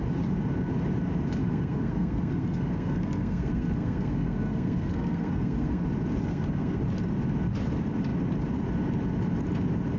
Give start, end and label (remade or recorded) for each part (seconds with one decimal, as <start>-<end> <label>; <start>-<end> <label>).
0.0-1.4 recorded; 1.4-5.8 remade; 5.8-6.2 recorded; 6.2-6.8 remade; 6.8-10.0 recorded